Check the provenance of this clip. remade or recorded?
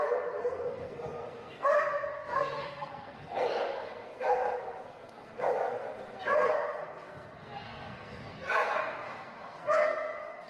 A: remade